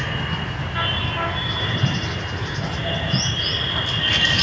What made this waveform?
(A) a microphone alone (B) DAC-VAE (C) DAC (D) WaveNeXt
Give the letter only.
A